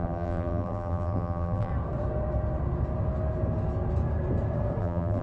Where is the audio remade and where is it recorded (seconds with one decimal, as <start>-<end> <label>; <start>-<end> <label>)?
0.0-1.7 remade; 1.7-4.8 recorded; 4.8-5.2 remade